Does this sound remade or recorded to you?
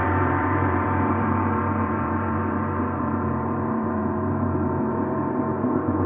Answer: remade